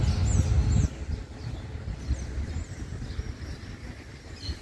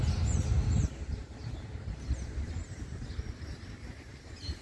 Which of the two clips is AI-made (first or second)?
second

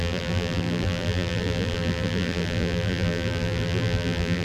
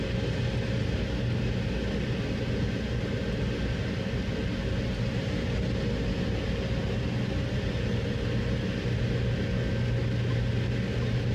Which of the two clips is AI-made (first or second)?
first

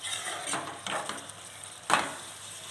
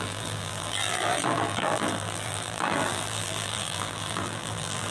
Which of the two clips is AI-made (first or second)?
second